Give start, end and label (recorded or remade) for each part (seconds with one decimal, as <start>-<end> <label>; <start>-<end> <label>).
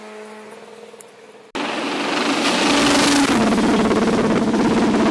0.0-5.1 recorded